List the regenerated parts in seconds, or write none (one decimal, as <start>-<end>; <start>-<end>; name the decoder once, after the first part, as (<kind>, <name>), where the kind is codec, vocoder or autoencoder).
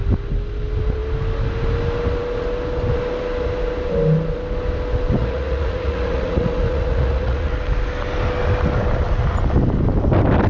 5.2-7.6 (vocoder, Vocos)